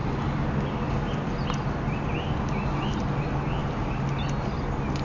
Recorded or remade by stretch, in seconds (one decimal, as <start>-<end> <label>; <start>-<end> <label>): 0.0-5.0 recorded